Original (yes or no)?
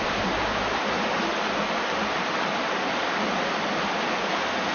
yes